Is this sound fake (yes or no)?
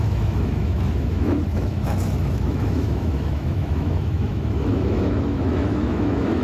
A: yes